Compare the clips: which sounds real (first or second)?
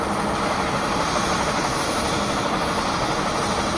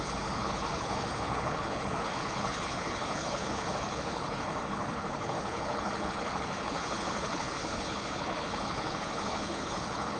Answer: first